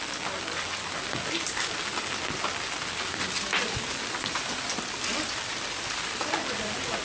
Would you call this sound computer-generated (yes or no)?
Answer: no